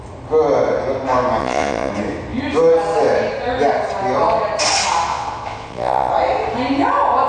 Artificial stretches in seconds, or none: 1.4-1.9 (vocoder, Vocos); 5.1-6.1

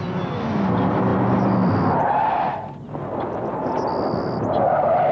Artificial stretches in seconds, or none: none